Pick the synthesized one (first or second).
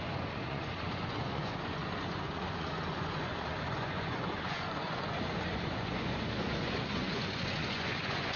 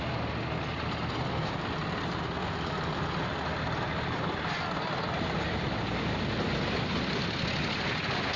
first